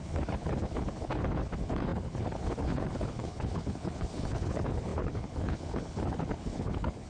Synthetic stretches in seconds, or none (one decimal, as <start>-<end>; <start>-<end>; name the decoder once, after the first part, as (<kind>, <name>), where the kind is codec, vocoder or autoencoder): 0.0-7.1 (codec, HILCodec)